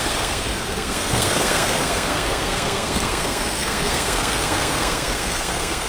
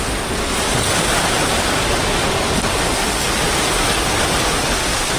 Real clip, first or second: second